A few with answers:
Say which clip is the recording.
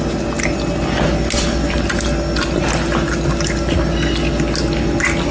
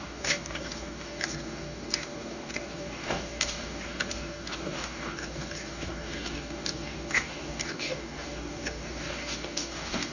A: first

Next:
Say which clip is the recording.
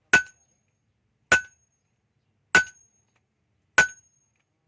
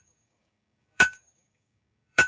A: first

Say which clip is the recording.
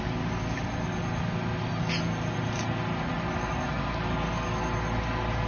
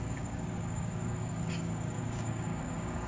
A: first